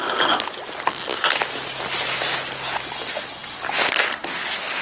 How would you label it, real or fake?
real